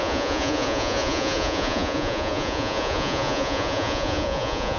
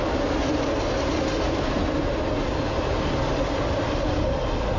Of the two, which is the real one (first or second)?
second